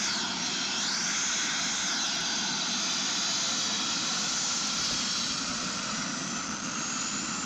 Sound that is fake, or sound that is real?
real